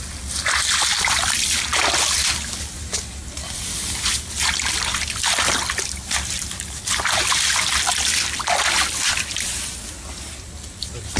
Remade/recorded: recorded